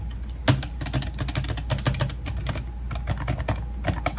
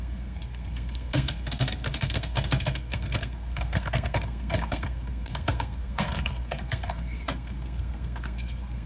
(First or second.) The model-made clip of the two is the second